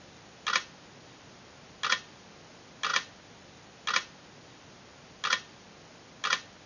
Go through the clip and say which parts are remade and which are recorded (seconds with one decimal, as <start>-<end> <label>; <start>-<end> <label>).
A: 0.0-6.7 recorded